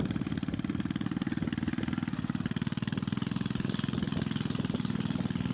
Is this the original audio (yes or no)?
yes